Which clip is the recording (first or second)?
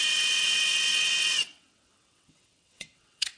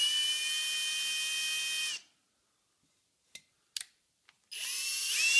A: second